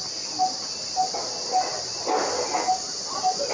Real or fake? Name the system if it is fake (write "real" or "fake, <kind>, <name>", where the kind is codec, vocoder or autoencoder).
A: real